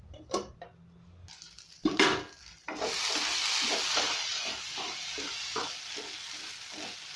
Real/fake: real